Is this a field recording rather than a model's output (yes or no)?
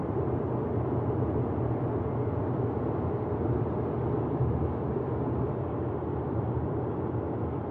yes